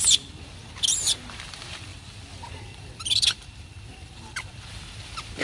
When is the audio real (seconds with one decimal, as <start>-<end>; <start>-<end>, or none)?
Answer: 0.0-1.9; 4.5-5.4